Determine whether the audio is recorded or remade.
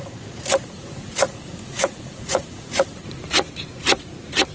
remade